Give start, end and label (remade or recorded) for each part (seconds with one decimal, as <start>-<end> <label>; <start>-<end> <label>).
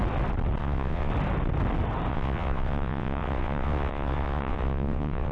0.0-0.6 recorded; 0.6-1.1 remade; 1.1-2.1 recorded; 2.1-5.3 remade